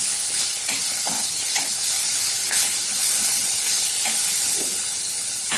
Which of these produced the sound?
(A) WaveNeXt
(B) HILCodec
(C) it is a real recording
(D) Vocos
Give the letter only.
B